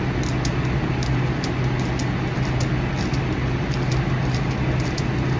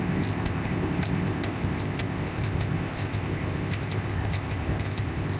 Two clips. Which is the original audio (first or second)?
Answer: first